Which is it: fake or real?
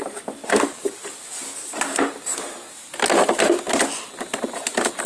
real